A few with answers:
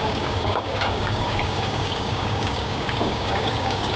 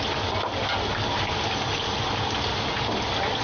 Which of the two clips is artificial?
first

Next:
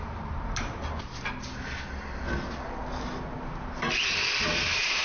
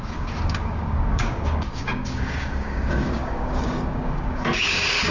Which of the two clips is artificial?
second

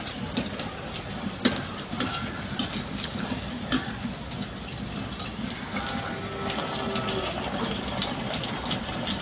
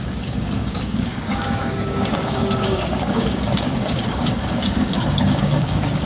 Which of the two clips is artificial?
second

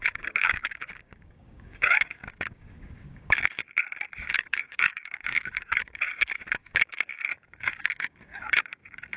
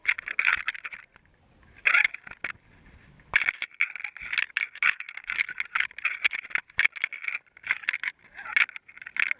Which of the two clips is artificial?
first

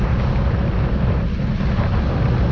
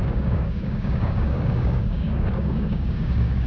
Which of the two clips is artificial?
second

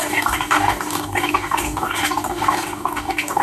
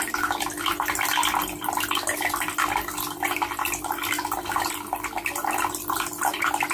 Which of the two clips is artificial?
first